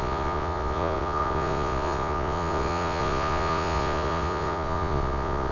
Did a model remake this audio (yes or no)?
yes